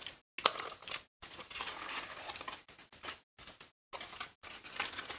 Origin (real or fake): real